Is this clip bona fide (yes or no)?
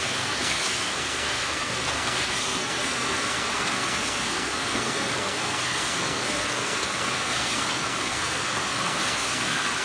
no